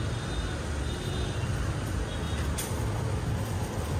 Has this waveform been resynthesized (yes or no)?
no